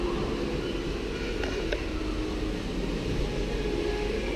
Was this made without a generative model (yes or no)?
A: yes